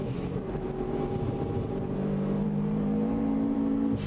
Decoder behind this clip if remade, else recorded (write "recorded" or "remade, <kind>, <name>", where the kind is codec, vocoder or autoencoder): remade, vocoder, BigVGAN v2